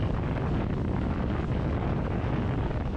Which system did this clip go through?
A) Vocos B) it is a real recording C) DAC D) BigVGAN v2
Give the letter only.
C